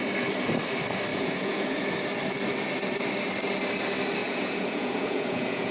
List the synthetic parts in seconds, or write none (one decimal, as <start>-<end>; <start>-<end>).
1.1-1.8; 4.2-5.7